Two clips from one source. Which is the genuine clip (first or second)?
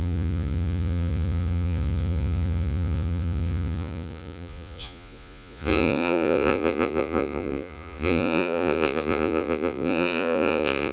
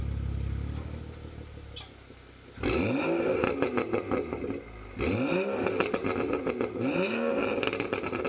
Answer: second